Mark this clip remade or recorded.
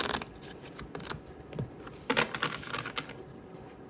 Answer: recorded